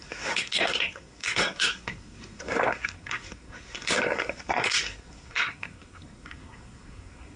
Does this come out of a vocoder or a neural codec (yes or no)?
yes